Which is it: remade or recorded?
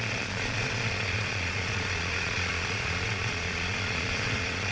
remade